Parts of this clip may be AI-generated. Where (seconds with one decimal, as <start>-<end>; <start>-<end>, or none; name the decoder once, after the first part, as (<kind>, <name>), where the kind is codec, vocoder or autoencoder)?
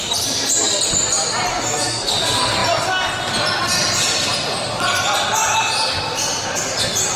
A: 1.5-2.1 (codec, SNAC)